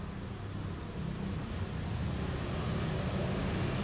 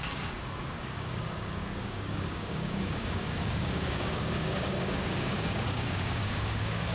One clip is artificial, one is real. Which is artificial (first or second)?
second